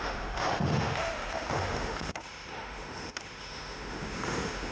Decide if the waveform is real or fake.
fake